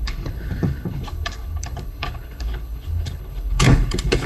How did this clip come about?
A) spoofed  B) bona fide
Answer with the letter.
A